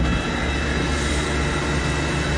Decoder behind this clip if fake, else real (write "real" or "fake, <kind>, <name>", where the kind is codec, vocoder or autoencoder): real